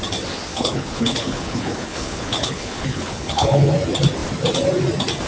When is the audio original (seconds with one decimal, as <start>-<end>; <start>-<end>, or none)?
0.0-0.5; 3.7-5.3